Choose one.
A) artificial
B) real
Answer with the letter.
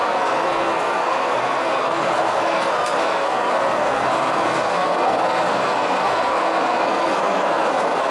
A